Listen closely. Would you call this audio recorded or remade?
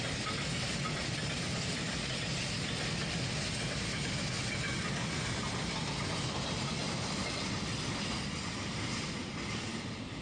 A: recorded